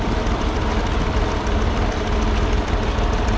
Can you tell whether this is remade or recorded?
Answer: remade